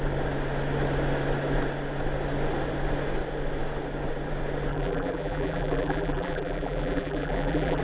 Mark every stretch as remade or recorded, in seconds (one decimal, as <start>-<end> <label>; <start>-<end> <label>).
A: 0.0-4.7 recorded; 4.7-7.8 remade